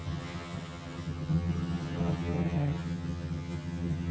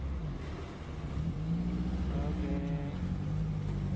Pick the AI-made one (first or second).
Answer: first